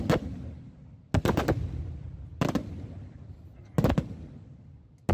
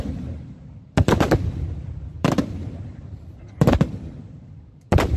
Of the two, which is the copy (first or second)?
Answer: second